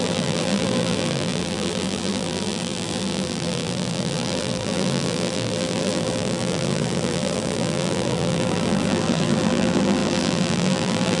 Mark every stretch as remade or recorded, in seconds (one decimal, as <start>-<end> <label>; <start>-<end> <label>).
0.0-11.2 remade